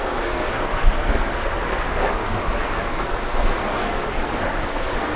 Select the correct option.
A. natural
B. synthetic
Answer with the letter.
B